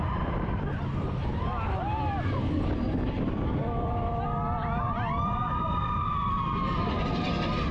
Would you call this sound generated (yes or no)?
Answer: no